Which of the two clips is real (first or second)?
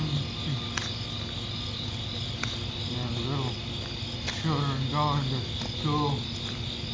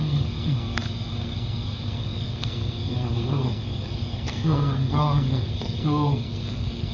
first